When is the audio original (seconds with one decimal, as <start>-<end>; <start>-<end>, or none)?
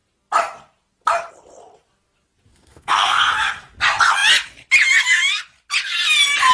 0.0-2.5; 3.3-6.5